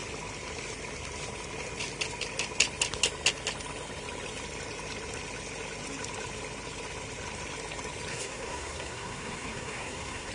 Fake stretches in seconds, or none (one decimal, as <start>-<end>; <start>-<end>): 8.1-10.3